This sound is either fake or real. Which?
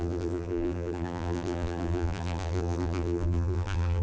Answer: fake